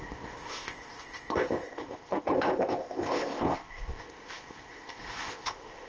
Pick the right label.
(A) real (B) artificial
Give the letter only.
B